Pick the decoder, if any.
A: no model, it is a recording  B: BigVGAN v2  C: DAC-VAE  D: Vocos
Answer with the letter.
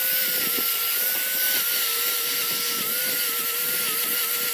A